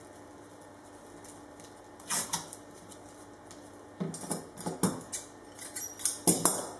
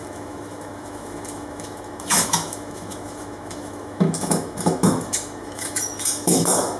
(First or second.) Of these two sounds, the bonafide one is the first